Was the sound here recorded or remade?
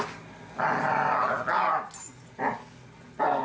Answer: recorded